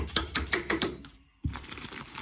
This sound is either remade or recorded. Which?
remade